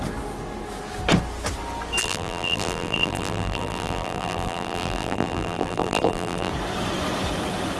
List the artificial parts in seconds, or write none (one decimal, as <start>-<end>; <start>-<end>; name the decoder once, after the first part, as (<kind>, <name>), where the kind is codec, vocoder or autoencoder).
2.0-6.5 (vocoder, BigVGAN v2)